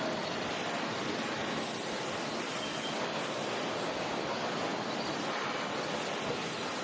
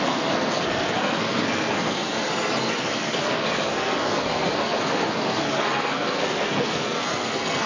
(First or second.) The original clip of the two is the first